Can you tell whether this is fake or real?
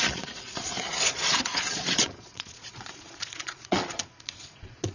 fake